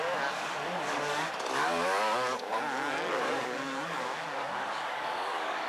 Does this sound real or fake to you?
fake